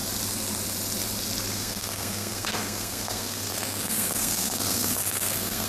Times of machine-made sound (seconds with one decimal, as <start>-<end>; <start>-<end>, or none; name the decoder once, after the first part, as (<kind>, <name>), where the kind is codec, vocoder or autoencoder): 1.5-5.7 (codec, SNAC)